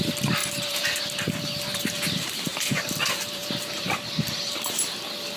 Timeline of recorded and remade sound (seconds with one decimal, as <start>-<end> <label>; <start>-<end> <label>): 0.0-0.4 recorded; 0.4-1.0 remade; 1.0-1.7 recorded; 1.7-4.9 remade; 4.9-5.4 recorded